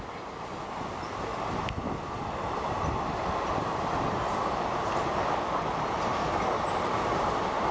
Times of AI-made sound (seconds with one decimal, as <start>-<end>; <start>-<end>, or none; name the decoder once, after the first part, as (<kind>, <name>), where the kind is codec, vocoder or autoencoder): none